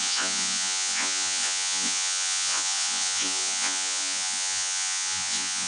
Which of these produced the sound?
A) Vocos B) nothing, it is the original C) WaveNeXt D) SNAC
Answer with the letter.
A